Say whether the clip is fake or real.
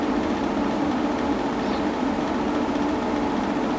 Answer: real